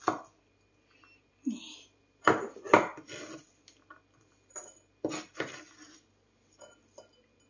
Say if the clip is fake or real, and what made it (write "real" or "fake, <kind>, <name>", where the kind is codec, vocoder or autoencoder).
real